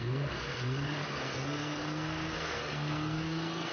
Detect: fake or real fake